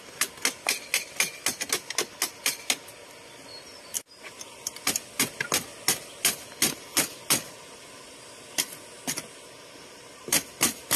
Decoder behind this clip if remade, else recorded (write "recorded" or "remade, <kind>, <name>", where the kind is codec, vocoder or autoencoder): recorded